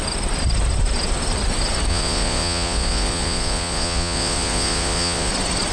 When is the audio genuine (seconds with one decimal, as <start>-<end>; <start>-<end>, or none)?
0.0-1.9; 5.3-5.7